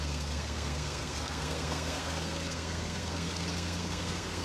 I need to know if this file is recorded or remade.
remade